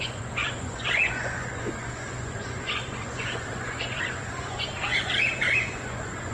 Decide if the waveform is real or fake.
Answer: fake